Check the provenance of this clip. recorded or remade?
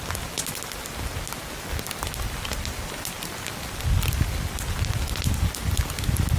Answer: recorded